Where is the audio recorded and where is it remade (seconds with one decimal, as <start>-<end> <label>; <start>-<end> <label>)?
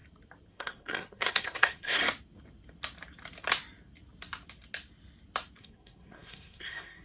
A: 0.0-0.5 recorded; 0.5-2.0 remade; 2.0-5.6 recorded; 5.6-7.0 remade